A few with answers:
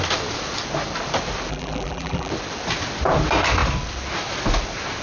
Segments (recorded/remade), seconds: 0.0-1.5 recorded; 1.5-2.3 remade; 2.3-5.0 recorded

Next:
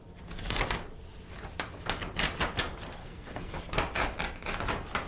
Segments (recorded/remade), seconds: 0.0-3.0 recorded; 3.0-3.6 remade; 3.6-5.1 recorded

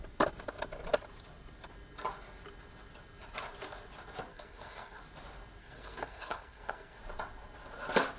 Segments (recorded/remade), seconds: 0.0-4.3 recorded; 4.3-5.0 remade; 5.0-5.6 recorded; 5.6-7.0 remade; 7.0-8.2 recorded

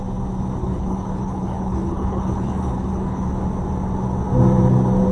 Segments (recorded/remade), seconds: 0.0-0.6 recorded; 0.6-3.3 remade; 3.3-5.1 recorded

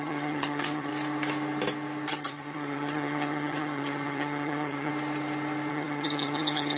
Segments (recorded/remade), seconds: 0.0-0.9 remade; 0.9-2.1 recorded; 2.1-4.9 remade; 4.9-5.7 recorded; 5.7-6.8 remade